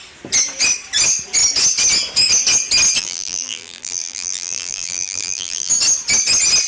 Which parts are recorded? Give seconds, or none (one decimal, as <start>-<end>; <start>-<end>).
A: 0.0-3.0; 5.7-6.7

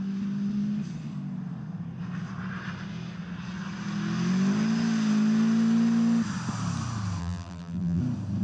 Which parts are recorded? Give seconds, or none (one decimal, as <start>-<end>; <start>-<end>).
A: 0.0-7.2; 8.0-8.4

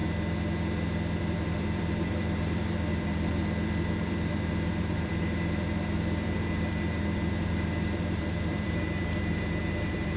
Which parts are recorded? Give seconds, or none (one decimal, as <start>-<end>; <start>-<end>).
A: 0.0-1.2

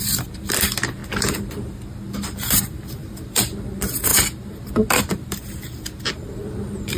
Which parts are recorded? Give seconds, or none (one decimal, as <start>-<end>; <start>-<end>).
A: 1.0-2.1; 4.1-5.0

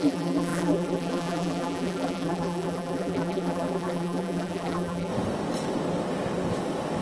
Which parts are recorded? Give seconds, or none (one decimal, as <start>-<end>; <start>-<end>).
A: 5.1-7.0

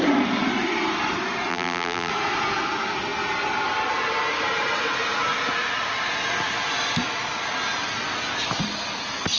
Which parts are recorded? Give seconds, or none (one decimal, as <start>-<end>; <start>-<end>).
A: 0.0-1.5; 2.1-9.4

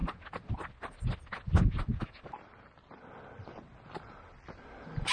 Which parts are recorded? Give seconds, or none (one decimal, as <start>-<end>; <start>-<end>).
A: 0.0-5.1